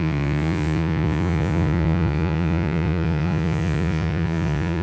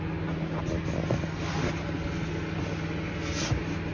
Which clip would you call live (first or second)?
second